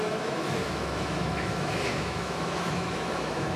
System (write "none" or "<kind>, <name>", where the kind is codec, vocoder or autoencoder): autoencoder, DAC-VAE